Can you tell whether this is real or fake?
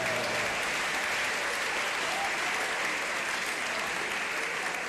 real